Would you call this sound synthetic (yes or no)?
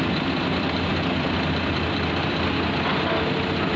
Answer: no